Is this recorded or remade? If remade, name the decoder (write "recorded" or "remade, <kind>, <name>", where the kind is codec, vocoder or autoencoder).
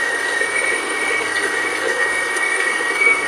remade, codec, SNAC